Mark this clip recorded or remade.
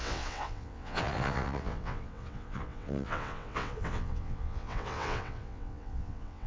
remade